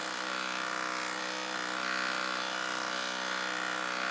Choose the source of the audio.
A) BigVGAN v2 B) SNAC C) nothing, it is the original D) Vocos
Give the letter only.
C